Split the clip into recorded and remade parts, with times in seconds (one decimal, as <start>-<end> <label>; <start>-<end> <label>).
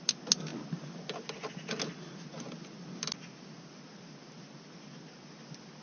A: 0.0-5.8 recorded